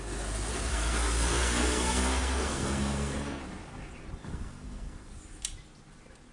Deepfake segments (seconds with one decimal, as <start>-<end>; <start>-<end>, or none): 0.5-3.4; 4.2-5.1